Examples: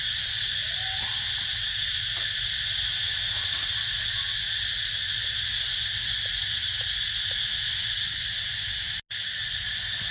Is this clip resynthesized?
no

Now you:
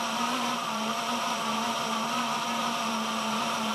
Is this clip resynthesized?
yes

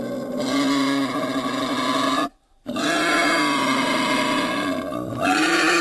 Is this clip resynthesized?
no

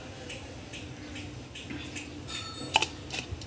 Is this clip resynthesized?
no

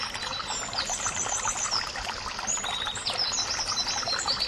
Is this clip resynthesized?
no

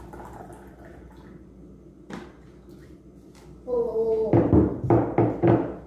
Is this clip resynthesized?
no